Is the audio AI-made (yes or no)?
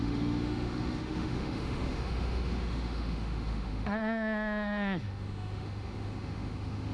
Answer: yes